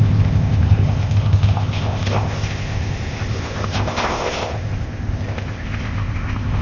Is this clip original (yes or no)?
no